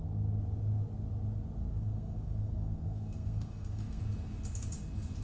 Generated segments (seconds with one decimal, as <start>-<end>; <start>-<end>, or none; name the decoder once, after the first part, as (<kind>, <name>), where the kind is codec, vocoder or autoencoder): 1.7-4.0 (codec, SNAC)